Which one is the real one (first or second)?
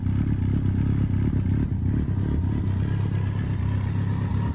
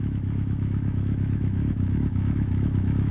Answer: first